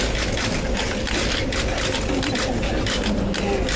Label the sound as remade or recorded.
recorded